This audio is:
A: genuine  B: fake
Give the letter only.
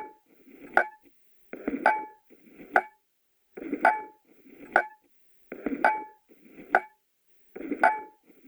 A